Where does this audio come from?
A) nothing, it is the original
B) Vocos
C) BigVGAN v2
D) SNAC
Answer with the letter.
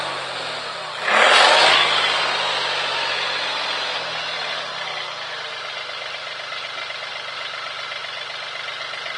A